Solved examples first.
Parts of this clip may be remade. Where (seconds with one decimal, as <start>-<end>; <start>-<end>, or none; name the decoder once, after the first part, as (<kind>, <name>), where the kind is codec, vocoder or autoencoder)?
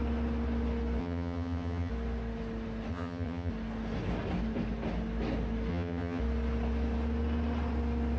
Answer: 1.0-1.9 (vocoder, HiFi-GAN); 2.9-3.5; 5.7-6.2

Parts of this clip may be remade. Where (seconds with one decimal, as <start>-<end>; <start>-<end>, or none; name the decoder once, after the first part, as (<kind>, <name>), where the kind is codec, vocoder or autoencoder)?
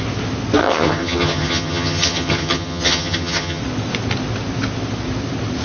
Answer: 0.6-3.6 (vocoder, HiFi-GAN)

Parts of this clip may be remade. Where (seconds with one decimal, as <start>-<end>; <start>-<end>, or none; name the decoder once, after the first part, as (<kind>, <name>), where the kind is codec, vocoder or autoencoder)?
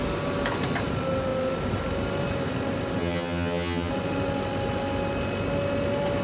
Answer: 3.0-3.9 (vocoder, HiFi-GAN)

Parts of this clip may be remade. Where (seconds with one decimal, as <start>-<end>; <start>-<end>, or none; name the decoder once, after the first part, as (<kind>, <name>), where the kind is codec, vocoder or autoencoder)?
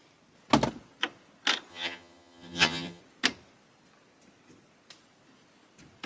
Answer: 1.7-3.0 (vocoder, HiFi-GAN)